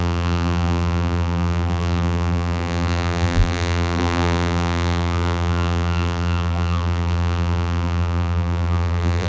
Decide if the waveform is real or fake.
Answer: fake